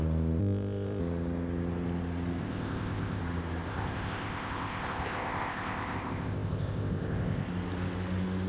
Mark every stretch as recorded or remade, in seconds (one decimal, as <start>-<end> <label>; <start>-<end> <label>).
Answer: 0.0-0.4 recorded; 0.4-1.0 remade; 1.0-2.4 recorded; 2.4-3.2 remade; 3.2-3.7 recorded; 3.7-7.5 remade; 7.5-8.5 recorded